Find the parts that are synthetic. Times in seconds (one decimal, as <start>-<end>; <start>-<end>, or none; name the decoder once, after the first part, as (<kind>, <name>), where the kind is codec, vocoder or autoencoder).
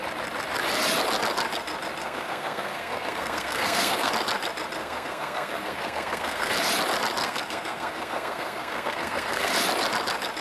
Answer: 2.0-4.1 (codec, SNAC); 4.8-6.5; 7.2-9.5